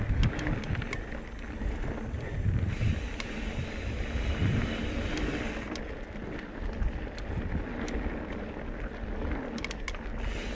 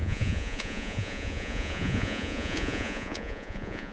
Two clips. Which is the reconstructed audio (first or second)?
second